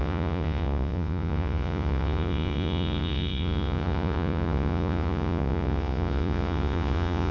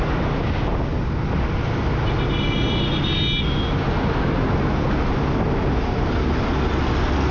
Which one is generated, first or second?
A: first